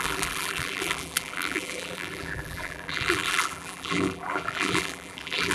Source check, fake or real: fake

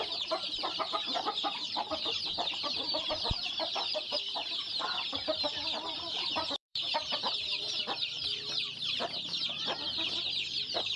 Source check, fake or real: fake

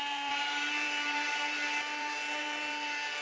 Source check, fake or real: fake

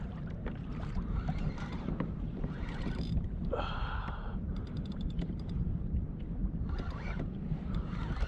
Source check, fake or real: fake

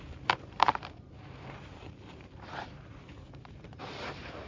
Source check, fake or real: fake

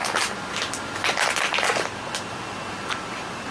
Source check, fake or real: real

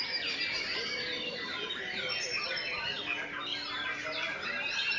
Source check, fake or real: real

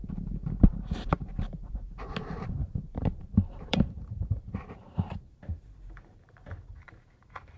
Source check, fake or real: fake